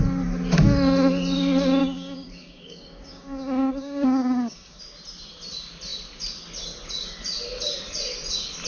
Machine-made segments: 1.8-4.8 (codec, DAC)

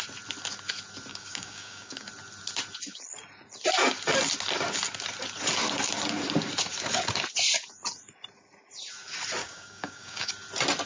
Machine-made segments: 1.1-2.1 (codec, DAC); 9.4-10.3

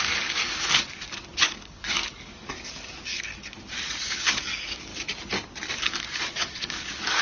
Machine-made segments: 0.0-3.3 (codec, DAC); 4.1-4.9; 5.7-7.2

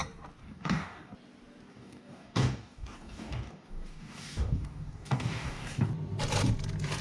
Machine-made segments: 0.4-1.1 (codec, DAC); 1.7-5.9

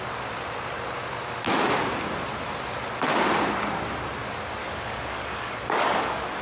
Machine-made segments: 4.6-6.4 (codec, DAC)